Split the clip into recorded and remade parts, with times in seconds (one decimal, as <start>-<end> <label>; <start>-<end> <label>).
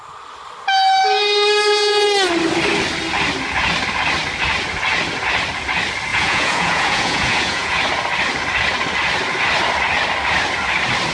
0.0-6.1 recorded; 6.1-7.8 remade; 7.8-11.1 recorded